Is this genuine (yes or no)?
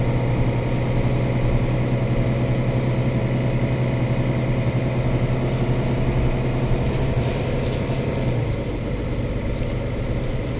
yes